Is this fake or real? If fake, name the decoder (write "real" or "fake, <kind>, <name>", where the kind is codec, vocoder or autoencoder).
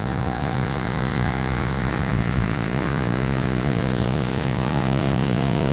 fake, vocoder, Vocos